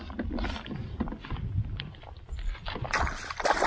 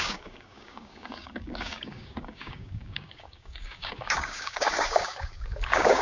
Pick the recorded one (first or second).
first